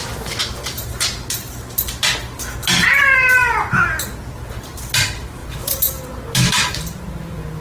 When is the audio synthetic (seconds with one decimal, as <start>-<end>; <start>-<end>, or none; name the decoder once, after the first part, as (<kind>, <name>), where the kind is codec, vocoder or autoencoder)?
0.4-0.9 (vocoder, BigVGAN v2); 5.4-6.2